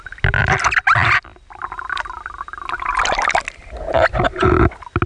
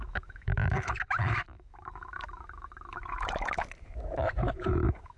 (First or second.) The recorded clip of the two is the first